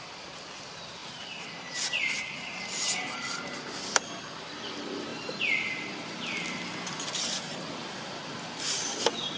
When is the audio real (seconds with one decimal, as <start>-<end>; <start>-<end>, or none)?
0.0-9.4